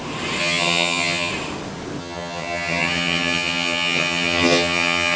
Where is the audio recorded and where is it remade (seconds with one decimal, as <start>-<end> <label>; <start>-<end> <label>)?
0.0-0.4 recorded; 0.4-1.3 remade; 1.3-2.0 recorded; 2.0-5.2 remade